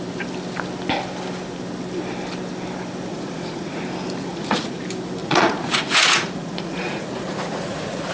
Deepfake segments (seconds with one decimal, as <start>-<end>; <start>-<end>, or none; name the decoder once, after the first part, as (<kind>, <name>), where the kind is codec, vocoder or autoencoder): 3.1-3.8 (vocoder, Vocos); 4.2-4.8; 5.2-8.1